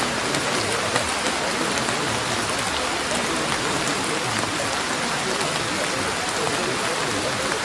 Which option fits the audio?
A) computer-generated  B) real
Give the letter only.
B